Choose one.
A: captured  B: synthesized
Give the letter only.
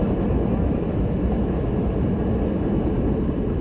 A